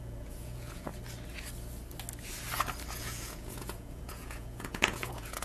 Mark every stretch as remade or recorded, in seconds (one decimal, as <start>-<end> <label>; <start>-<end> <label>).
0.0-0.9 remade; 0.9-2.9 recorded; 2.9-5.4 remade